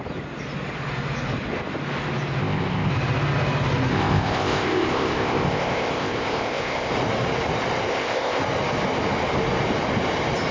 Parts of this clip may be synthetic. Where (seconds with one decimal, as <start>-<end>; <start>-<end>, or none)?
2.4-2.9; 3.9-6.9; 7.9-8.4